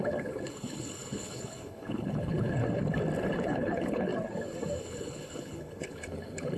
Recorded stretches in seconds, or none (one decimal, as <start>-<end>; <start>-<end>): 2.6-3.4; 4.1-4.8